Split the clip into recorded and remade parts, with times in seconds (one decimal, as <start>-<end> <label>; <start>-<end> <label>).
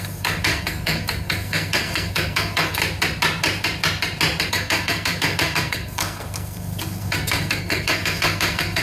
0.0-2.8 remade; 2.8-4.5 recorded; 4.5-8.8 remade